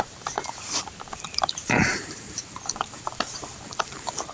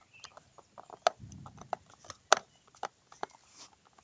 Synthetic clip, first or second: first